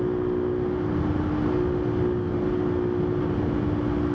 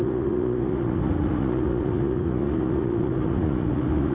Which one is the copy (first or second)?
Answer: second